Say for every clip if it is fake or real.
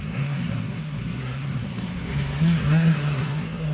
fake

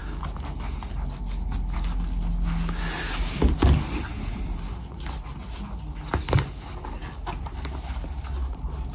real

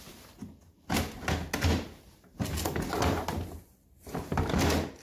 real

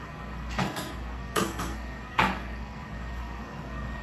fake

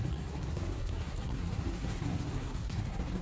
fake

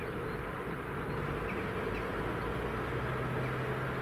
real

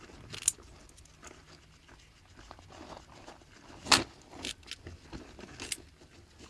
real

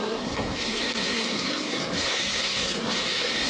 fake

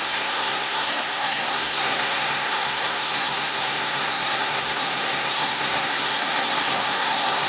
fake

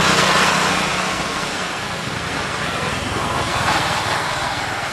fake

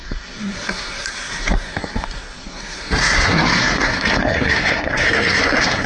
fake